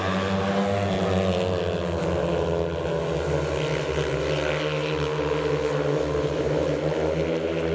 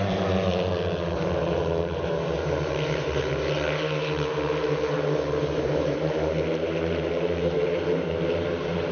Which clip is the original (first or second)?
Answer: first